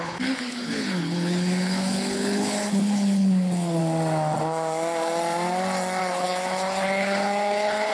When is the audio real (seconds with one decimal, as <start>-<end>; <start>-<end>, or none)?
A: 3.8-6.0